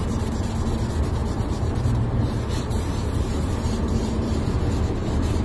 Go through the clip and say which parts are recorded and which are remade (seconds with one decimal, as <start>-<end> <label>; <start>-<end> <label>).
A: 0.0-0.5 remade; 0.5-1.2 recorded; 1.2-4.4 remade; 4.4-5.4 recorded